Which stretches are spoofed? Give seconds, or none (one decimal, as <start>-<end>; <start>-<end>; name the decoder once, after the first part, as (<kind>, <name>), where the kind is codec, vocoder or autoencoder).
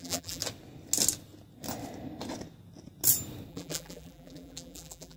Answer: 0.0-0.4 (vocoder, BigVGAN v2); 3.5-5.2